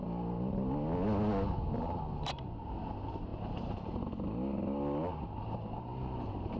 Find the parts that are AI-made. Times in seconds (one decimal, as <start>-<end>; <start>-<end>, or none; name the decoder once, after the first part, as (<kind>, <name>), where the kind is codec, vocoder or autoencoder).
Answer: none